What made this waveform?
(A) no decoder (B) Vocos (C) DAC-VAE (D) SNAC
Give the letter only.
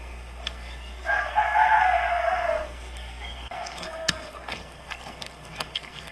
D